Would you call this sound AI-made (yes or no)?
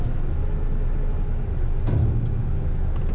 no